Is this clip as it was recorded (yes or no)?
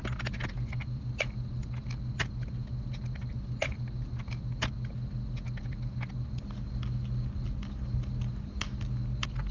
yes